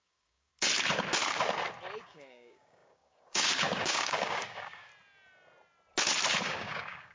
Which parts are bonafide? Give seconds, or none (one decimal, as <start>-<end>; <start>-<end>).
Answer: 0.5-2.0; 4.9-6.4